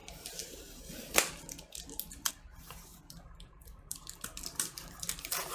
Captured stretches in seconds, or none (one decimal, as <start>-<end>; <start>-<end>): 0.0-2.9; 5.0-5.5